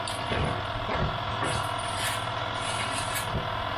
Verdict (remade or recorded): recorded